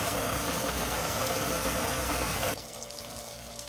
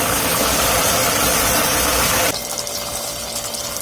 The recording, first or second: second